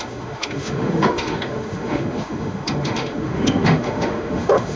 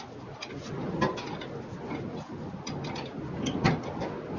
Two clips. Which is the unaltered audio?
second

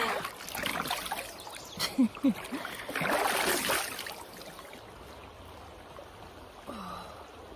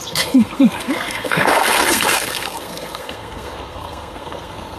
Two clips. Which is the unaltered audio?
first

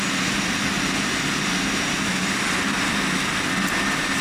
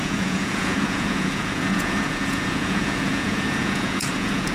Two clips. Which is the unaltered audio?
first